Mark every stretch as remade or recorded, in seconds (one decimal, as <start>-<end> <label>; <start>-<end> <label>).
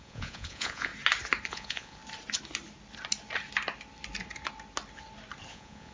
0.0-0.9 remade; 0.9-1.5 recorded; 1.5-2.0 remade; 2.0-5.5 recorded; 5.5-5.9 remade